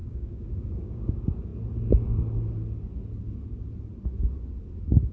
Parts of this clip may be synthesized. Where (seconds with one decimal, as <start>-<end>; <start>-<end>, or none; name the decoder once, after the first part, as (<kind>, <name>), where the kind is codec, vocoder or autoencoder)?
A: 0.0-1.1 (codec, DAC)